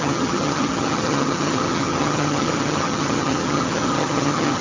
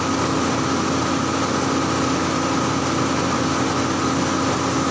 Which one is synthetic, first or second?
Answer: first